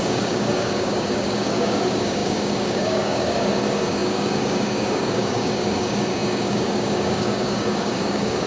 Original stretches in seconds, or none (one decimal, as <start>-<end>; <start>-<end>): none